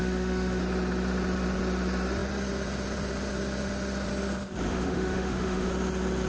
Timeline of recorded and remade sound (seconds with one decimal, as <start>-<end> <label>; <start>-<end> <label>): 0.0-0.6 remade; 0.6-4.7 recorded; 4.7-5.7 remade; 5.7-6.3 recorded